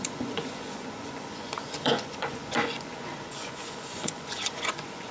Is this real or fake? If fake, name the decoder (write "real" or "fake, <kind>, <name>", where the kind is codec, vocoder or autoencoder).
fake, vocoder, Vocos